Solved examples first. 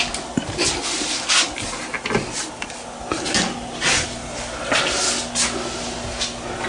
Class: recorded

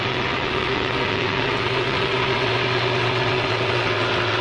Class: remade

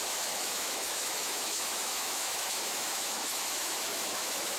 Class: remade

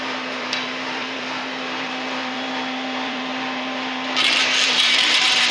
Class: remade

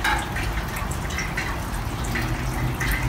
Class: recorded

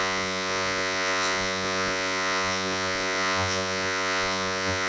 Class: remade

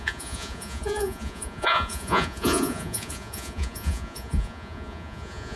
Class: remade